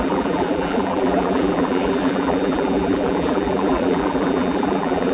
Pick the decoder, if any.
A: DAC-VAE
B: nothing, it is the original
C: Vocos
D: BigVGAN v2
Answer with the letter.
D